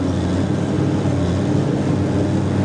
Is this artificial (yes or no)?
no